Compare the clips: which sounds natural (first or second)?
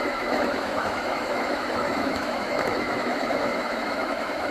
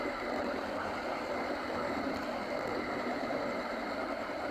second